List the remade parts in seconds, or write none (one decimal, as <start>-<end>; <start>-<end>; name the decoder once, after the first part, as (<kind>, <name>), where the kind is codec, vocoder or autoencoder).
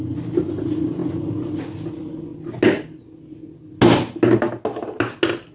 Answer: none